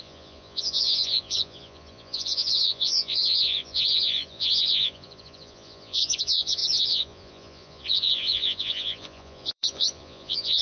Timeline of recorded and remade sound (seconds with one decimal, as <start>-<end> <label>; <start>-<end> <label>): 0.0-10.6 remade